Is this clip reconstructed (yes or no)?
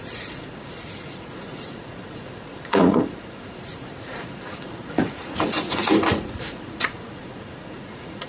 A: yes